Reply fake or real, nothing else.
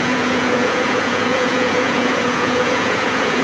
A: fake